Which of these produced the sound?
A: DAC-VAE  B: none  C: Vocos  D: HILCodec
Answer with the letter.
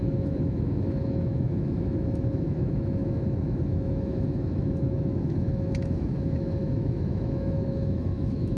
A